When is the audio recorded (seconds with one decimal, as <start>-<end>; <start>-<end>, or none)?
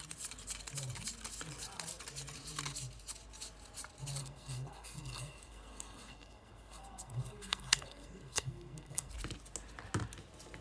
0.0-4.2; 9.1-10.6